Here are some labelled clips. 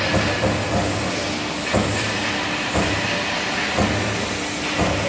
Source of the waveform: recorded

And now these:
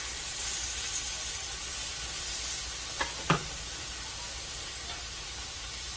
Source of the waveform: recorded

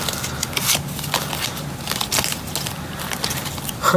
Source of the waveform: recorded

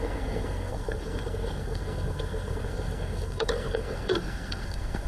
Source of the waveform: remade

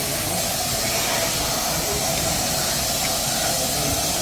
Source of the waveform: recorded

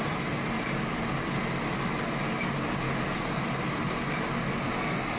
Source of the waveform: recorded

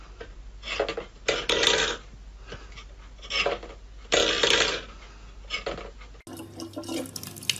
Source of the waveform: recorded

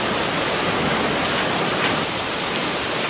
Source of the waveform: recorded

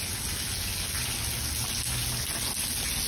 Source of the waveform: recorded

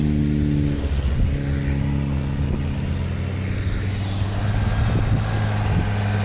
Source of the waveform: recorded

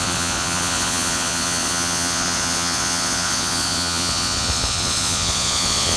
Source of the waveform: remade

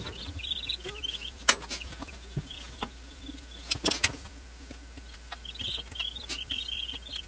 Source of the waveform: recorded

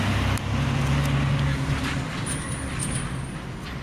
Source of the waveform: recorded